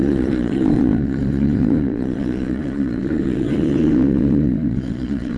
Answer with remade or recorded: remade